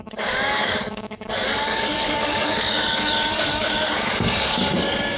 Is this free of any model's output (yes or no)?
no